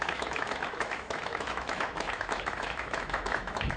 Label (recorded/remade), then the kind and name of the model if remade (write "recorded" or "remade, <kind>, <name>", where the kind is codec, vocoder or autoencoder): remade, autoencoder, DAC-VAE